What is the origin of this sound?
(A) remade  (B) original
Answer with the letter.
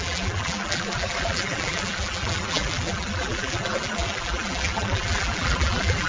A